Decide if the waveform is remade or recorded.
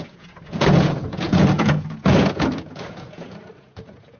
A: remade